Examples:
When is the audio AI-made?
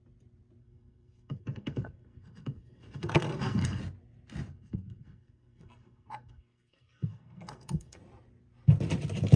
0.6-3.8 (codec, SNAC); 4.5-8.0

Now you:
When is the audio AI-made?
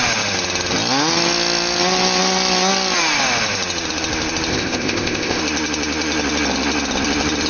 4.5-5.4 (codec, ZipCodec)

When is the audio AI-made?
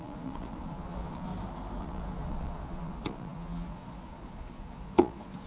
0.0-1.3 (vocoder, Vocos); 1.8-5.5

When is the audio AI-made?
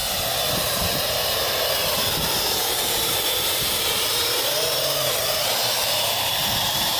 0.5-7.0 (vocoder, BigVGAN v2)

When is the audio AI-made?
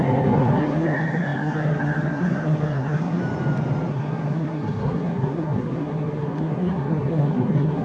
0.0-3.2 (codec, SNAC); 3.9-7.8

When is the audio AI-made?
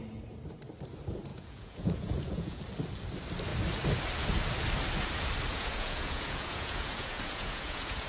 1.3-2.6 (vocoder, Vocos); 5.5-8.1